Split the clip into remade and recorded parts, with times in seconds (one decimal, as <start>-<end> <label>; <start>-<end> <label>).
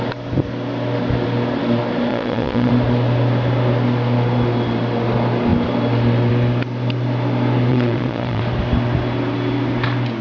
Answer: 0.0-2.1 recorded; 2.1-2.7 remade; 2.7-7.7 recorded; 7.7-8.4 remade; 8.4-10.2 recorded